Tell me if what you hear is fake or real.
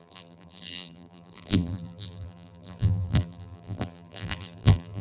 fake